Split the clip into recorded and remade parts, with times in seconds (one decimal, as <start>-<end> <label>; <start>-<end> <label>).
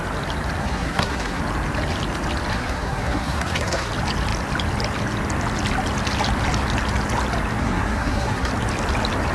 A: 0.0-0.6 recorded; 0.6-1.4 remade; 1.4-2.5 recorded; 2.5-3.9 remade; 3.9-7.6 recorded; 7.6-8.5 remade; 8.5-9.3 recorded